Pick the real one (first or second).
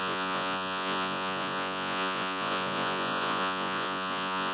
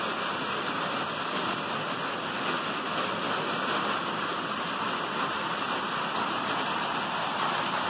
second